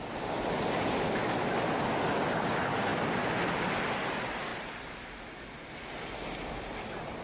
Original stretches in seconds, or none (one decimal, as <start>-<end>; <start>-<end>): 0.0-2.9; 3.5-7.2